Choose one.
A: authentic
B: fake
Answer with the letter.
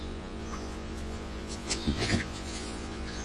B